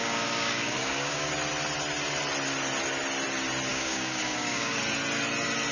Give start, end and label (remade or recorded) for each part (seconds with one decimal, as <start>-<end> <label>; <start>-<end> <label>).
0.0-1.3 remade; 1.3-3.7 recorded; 3.7-4.8 remade; 4.8-5.7 recorded